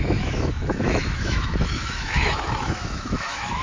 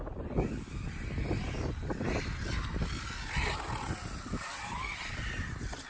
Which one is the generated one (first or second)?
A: first